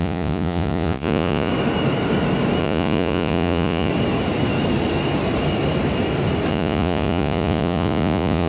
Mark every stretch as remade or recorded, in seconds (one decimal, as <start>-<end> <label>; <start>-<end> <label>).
0.0-1.5 remade; 1.5-2.6 recorded; 2.6-3.9 remade; 3.9-6.5 recorded; 6.5-8.5 remade